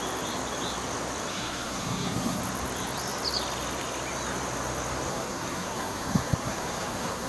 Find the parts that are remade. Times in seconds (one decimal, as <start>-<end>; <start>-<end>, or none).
1.3-2.4; 5.1-7.3